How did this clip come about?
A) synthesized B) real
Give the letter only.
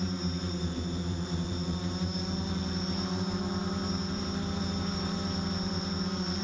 A